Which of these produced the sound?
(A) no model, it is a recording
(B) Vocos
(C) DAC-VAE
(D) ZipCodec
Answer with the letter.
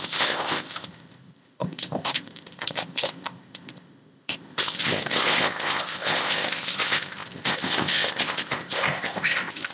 D